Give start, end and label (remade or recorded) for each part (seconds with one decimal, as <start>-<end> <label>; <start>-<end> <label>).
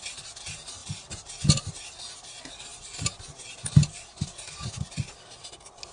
0.0-5.9 recorded